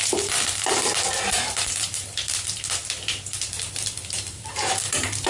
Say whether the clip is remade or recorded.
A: remade